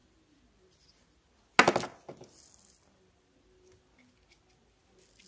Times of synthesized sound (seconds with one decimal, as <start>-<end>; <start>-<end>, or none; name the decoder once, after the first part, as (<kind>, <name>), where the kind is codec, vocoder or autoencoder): none